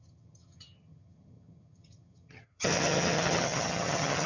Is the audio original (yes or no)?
no